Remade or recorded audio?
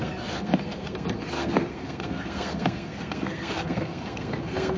remade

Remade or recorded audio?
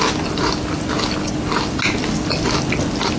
recorded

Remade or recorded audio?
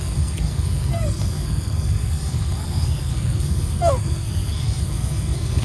remade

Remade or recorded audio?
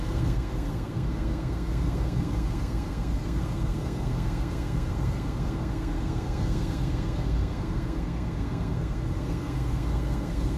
remade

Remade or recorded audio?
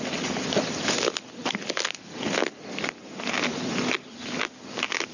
recorded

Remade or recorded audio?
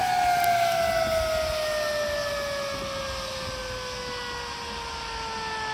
recorded